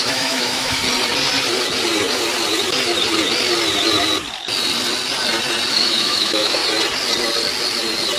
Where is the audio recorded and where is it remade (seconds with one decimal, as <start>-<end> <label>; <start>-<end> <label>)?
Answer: 0.0-0.8 remade; 0.8-5.7 recorded; 5.7-6.6 remade; 6.6-8.2 recorded